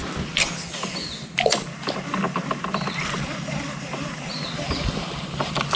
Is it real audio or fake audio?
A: real